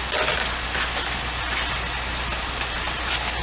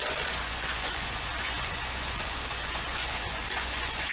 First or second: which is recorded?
first